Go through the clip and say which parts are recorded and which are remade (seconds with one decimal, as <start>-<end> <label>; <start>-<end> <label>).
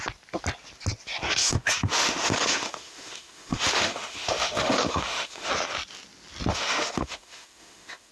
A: 0.0-1.4 recorded; 1.4-5.5 remade; 5.5-6.5 recorded; 6.5-8.1 remade